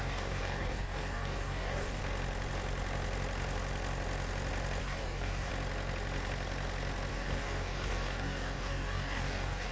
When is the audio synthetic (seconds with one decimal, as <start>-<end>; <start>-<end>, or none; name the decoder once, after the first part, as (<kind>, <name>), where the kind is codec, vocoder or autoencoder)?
0.0-2.0 (codec, DAC); 4.8-5.5; 7.1-9.7